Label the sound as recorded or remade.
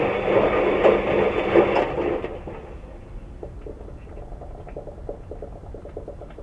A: recorded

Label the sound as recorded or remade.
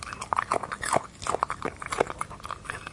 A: recorded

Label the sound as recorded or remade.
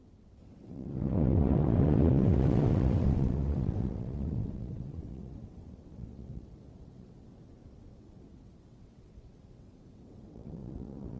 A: remade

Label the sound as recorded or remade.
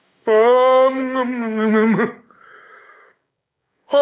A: remade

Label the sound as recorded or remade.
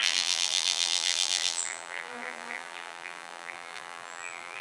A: remade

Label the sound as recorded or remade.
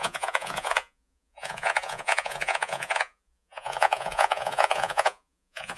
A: remade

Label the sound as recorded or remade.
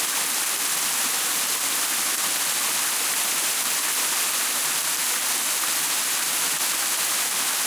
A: recorded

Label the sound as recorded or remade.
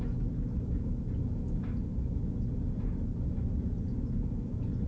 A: recorded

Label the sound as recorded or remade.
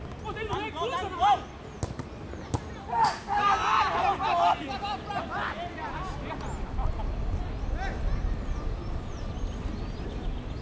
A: recorded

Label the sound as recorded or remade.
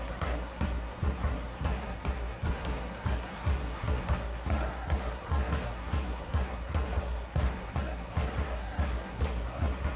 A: remade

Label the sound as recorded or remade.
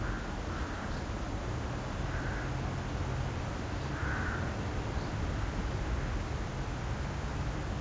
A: recorded